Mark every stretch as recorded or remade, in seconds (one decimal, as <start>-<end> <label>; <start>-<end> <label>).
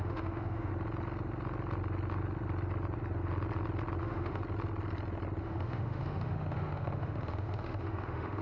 0.0-0.7 remade; 0.7-4.0 recorded; 4.0-4.4 remade; 4.4-5.4 recorded; 5.4-8.4 remade